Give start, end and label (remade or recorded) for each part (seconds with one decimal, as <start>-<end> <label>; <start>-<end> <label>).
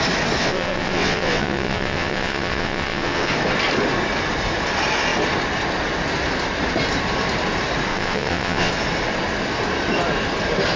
0.0-0.4 recorded; 0.4-3.3 remade; 3.3-7.9 recorded; 7.9-8.7 remade; 8.7-10.8 recorded